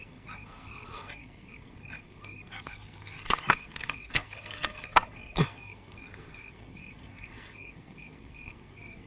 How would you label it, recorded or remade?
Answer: remade